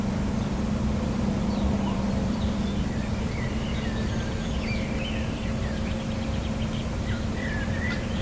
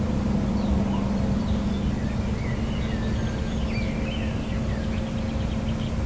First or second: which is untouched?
second